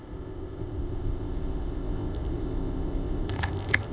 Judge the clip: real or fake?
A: fake